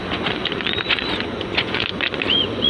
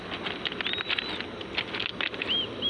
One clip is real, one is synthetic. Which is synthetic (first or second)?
first